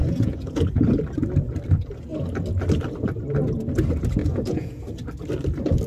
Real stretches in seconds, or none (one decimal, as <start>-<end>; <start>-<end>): 0.7-4.2; 4.8-5.9